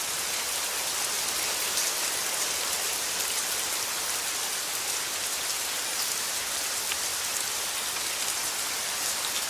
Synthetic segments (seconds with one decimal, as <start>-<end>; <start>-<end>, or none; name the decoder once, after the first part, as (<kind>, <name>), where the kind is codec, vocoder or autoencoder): none